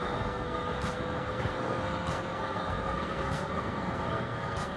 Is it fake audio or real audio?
fake